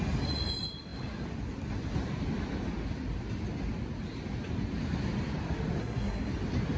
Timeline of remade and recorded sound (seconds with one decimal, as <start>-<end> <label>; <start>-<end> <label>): 0.0-5.8 recorded; 5.8-6.3 remade; 6.3-6.8 recorded